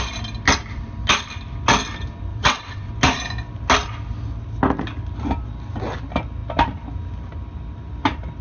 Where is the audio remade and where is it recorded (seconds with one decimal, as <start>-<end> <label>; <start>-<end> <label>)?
0.0-2.3 recorded; 2.3-2.9 remade; 2.9-8.4 recorded